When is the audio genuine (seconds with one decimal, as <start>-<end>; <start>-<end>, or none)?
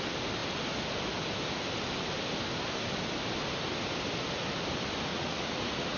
0.0-5.1